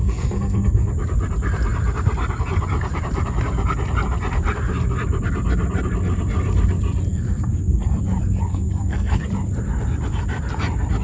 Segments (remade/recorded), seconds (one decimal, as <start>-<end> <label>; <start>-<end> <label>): 0.0-0.9 remade; 0.9-7.1 recorded; 7.1-8.0 remade; 8.0-8.5 recorded; 8.5-9.2 remade; 9.2-11.0 recorded